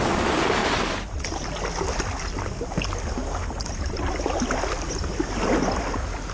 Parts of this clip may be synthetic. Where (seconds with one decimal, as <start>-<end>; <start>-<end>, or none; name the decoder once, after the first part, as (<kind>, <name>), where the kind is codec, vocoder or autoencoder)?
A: 0.6-1.4 (vocoder, BigVGAN v2)